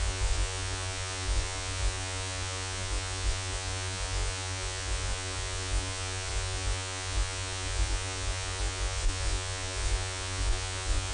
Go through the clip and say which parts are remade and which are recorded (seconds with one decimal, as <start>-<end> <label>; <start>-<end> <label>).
0.0-11.1 remade